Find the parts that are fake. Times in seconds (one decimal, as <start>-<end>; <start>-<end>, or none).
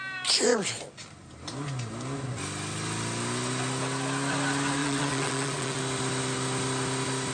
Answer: 4.8-5.8